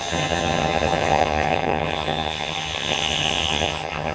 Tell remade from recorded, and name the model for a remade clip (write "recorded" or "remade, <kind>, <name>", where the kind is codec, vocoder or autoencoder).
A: remade, vocoder, HiFi-GAN